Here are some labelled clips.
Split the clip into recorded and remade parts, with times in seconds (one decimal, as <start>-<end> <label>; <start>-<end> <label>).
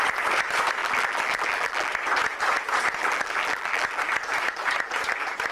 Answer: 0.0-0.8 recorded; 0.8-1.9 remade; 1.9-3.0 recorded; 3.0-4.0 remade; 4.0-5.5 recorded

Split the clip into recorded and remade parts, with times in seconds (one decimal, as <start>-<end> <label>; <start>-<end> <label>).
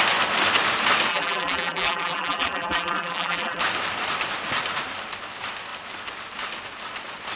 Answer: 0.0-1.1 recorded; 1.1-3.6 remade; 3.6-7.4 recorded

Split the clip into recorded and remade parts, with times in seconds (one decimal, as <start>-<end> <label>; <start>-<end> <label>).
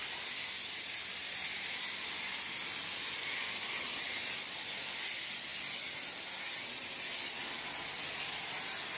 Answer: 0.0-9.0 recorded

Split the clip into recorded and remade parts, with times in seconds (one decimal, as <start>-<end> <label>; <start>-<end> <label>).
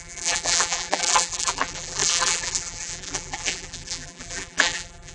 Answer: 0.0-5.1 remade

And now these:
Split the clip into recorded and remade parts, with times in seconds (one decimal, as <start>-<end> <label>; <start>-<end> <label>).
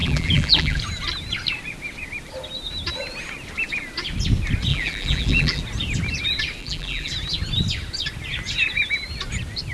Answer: 0.0-0.8 remade; 0.8-4.7 recorded; 4.7-5.6 remade; 5.6-6.6 recorded; 6.6-7.1 remade; 7.1-9.7 recorded